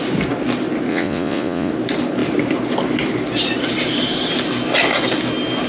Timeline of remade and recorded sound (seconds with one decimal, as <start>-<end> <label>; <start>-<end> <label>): 0.0-0.9 recorded; 0.9-1.7 remade; 1.7-5.7 recorded

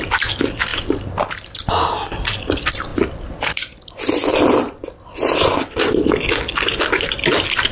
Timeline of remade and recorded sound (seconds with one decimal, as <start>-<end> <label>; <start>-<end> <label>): 0.0-0.7 remade; 0.7-2.5 recorded; 2.5-7.7 remade